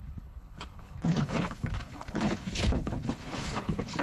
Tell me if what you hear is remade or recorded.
remade